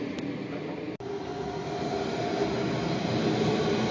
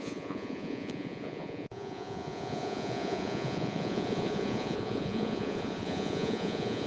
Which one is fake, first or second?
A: second